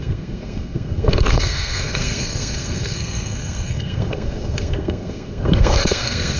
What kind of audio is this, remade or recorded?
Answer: remade